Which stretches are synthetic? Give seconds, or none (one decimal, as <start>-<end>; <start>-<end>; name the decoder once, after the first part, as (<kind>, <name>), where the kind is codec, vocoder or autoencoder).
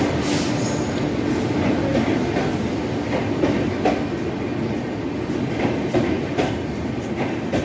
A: none